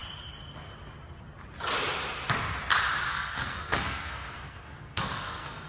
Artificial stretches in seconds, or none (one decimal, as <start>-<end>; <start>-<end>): 3.1-5.7